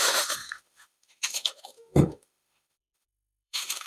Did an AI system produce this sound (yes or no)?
yes